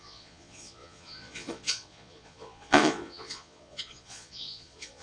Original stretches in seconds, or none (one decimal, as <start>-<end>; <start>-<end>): none